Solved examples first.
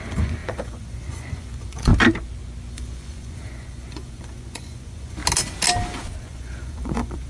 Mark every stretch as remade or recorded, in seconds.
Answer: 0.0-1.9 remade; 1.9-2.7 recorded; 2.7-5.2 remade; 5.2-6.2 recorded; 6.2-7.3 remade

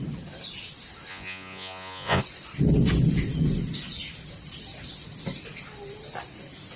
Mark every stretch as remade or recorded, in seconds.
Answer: 0.0-1.1 recorded; 1.1-2.2 remade; 2.2-6.8 recorded